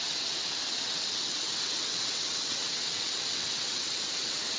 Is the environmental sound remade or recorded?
remade